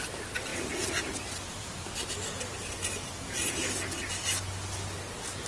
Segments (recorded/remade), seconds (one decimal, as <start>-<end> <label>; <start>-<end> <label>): 0.0-5.5 recorded